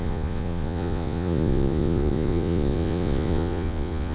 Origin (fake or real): fake